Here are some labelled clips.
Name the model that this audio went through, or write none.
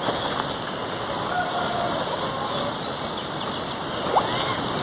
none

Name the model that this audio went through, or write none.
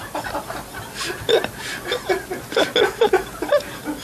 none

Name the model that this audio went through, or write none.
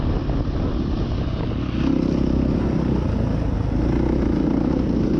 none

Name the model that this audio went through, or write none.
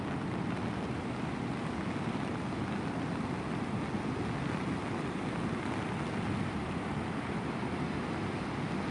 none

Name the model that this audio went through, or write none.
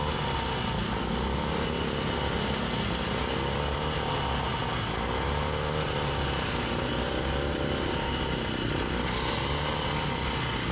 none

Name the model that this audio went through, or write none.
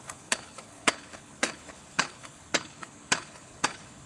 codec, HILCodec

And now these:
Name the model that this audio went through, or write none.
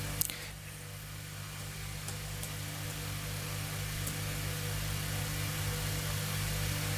none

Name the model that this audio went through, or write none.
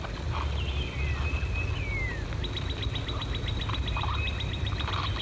none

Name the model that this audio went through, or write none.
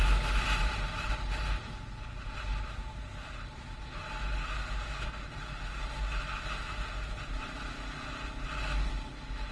none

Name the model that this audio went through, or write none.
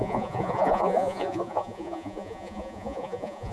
vocoder, Vocos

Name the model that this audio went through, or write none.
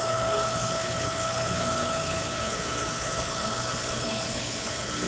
codec, HILCodec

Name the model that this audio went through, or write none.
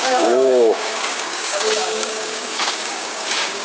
codec, DAC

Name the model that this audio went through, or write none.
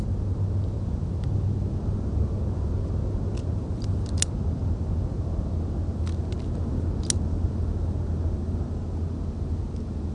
none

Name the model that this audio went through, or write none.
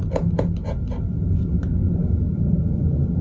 none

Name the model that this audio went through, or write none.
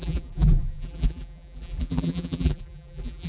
vocoder, BigVGAN v2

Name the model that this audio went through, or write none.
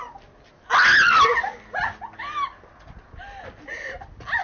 none